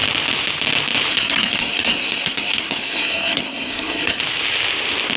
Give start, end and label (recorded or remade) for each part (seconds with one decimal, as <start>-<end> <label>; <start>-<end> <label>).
0.0-1.1 recorded; 1.1-4.2 remade; 4.2-5.2 recorded